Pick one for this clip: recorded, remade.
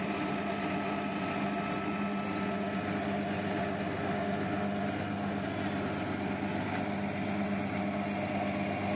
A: recorded